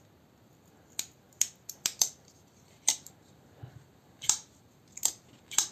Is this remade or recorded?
recorded